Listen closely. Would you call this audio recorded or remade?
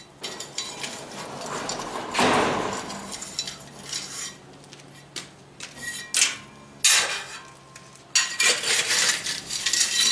recorded